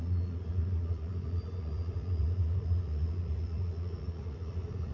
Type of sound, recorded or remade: remade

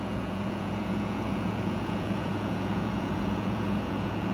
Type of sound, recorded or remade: remade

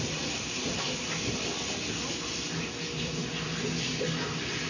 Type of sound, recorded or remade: recorded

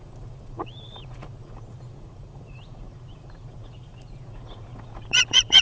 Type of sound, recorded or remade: remade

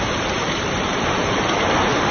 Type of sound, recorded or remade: remade